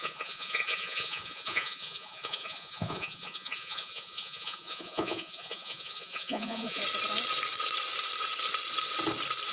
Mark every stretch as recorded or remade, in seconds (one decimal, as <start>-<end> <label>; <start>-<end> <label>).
0.0-6.8 remade; 6.8-9.5 recorded